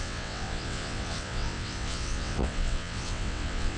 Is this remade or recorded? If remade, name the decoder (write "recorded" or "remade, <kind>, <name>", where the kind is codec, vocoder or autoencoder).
remade, vocoder, WaveNeXt